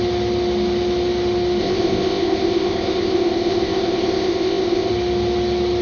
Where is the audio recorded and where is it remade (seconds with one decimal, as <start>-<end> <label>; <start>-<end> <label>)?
0.0-1.6 recorded; 1.6-4.9 remade; 4.9-5.8 recorded